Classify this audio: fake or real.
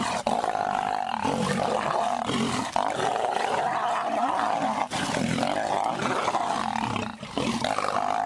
real